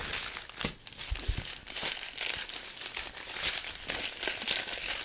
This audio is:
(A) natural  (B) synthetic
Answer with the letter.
A